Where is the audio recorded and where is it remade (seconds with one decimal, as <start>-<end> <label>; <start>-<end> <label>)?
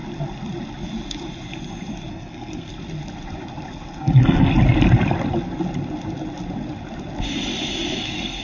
0.0-2.1 recorded; 2.1-2.7 remade; 2.7-4.0 recorded; 4.0-4.5 remade; 4.5-8.0 recorded; 8.0-8.4 remade